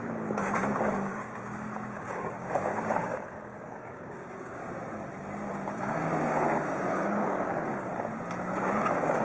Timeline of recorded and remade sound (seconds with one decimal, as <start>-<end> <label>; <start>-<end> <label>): 0.0-4.6 remade; 4.6-5.5 recorded; 5.5-7.9 remade; 7.9-8.5 recorded; 8.5-9.2 remade